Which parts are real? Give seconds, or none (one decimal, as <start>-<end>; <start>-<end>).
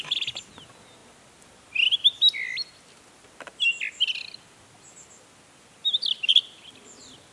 0.0-7.3